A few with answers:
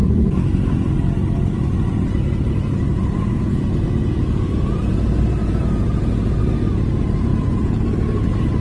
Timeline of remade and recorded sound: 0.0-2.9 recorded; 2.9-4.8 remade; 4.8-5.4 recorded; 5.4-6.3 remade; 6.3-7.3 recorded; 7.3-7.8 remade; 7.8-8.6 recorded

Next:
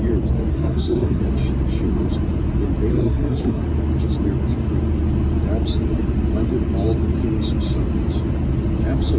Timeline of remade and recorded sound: 0.0-0.5 recorded; 0.5-1.2 remade; 1.2-2.9 recorded; 2.9-3.6 remade; 3.6-9.2 recorded

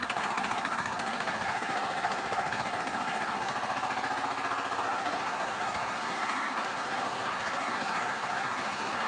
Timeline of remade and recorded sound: 0.0-3.5 remade; 3.5-4.8 recorded; 4.8-9.1 remade

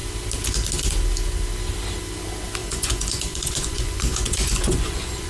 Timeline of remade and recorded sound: 0.0-2.6 recorded; 2.6-5.3 remade

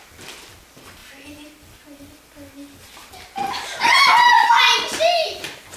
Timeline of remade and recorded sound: 0.0-5.8 recorded

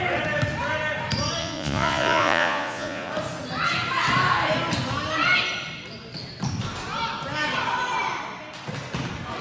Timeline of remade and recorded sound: 0.0-1.4 recorded; 1.4-3.1 remade; 3.1-9.4 recorded